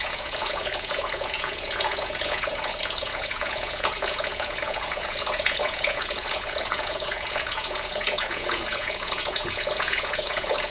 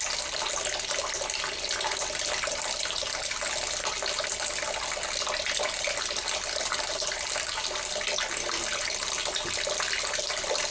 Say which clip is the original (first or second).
second